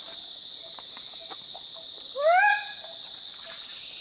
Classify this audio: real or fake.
real